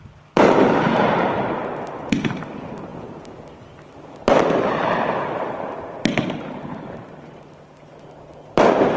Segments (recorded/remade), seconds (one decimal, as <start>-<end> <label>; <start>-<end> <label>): 0.0-9.0 recorded